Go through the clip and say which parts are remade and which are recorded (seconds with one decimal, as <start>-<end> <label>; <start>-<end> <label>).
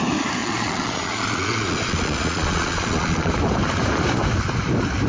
0.0-0.4 recorded; 0.4-3.3 remade; 3.3-5.1 recorded